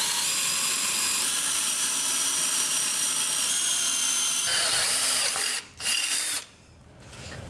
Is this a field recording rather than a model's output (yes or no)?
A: no